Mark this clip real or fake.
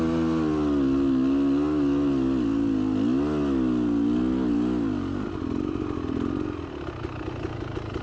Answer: real